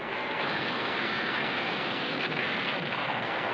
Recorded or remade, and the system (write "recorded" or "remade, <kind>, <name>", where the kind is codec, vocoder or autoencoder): remade, codec, SNAC